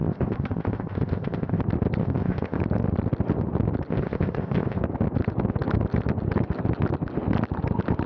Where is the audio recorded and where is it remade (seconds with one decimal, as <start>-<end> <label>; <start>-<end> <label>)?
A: 0.0-1.6 remade; 1.6-2.0 recorded; 2.0-2.6 remade; 2.6-3.9 recorded; 3.9-4.8 remade; 4.8-8.1 recorded